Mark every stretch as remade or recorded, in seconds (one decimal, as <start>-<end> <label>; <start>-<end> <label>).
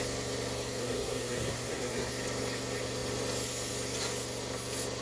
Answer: 0.0-0.8 recorded; 0.8-2.1 remade; 2.1-5.0 recorded